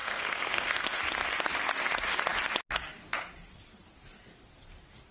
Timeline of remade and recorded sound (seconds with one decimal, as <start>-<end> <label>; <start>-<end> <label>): 0.0-1.0 remade; 1.0-5.1 recorded